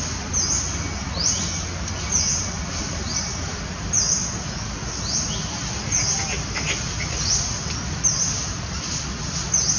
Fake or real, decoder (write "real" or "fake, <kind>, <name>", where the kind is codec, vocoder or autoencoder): real